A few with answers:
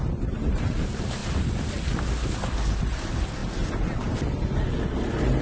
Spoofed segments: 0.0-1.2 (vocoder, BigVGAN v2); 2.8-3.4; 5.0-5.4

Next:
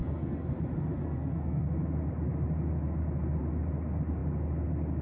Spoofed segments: 0.0-0.5 (codec, SNAC); 1.0-1.6